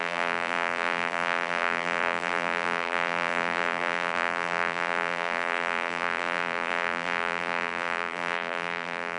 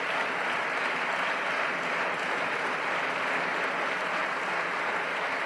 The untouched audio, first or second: second